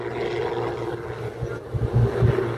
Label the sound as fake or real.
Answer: real